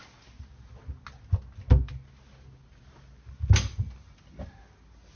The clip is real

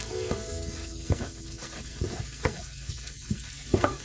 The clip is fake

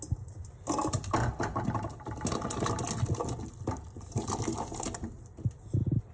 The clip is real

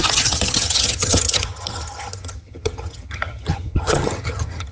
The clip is fake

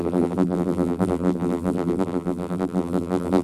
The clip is fake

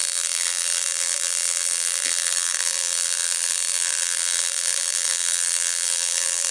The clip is fake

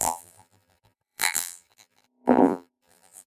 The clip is fake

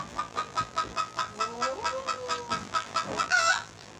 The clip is fake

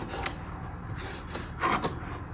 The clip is real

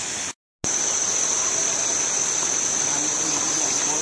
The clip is real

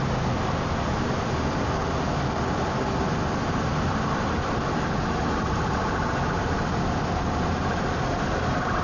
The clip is real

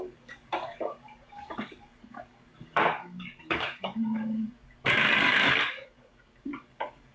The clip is fake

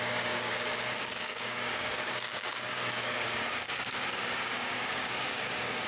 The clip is fake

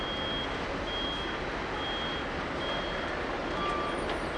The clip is real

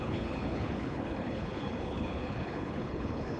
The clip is fake